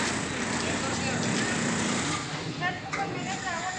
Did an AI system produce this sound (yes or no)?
no